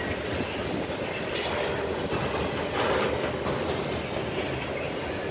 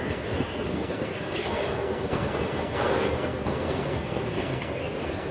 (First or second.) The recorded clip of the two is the first